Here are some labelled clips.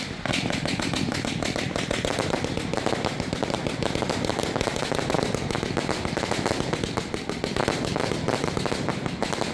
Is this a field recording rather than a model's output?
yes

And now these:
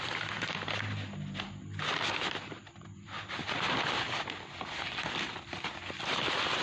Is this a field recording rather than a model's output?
yes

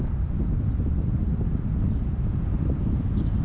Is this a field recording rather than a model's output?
yes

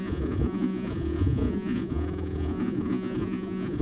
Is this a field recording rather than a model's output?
no